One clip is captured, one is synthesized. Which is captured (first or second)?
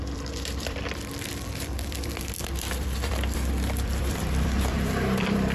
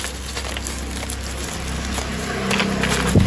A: second